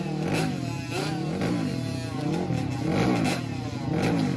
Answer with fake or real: real